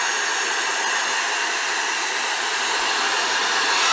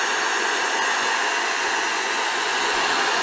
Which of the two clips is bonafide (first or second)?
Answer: first